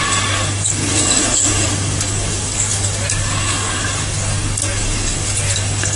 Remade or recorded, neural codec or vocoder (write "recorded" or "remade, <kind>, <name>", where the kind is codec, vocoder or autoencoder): remade, codec, DAC